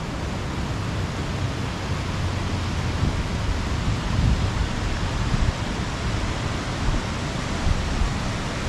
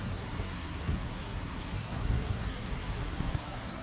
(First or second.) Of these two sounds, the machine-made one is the second